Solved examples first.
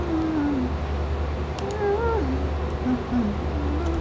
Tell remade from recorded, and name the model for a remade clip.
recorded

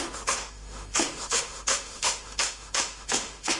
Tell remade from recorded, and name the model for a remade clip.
remade, autoencoder, DAC-VAE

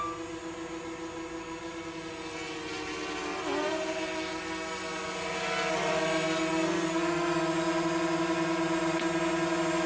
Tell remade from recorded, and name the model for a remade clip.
recorded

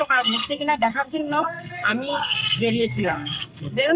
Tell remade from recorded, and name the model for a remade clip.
remade, codec, SNAC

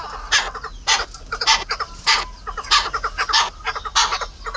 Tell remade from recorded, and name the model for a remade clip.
recorded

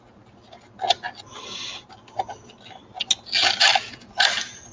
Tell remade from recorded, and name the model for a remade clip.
recorded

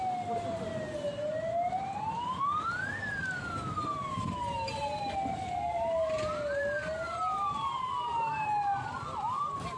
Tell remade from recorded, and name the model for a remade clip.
recorded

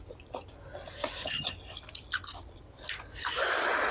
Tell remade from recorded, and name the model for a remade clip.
remade, vocoder, BigVGAN v2